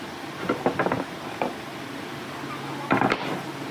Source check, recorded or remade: recorded